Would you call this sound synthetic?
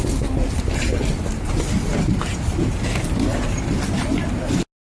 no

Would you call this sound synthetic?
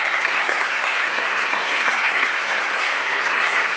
yes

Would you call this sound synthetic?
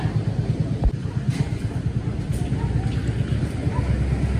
no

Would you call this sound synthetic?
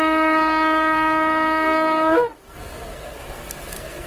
yes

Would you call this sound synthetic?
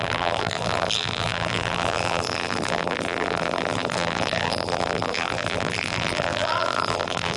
yes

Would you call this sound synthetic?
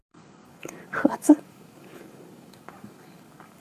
yes